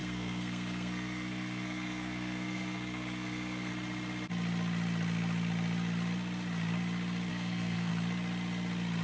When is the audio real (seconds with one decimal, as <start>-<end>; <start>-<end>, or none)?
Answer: 3.7-7.3; 7.9-9.0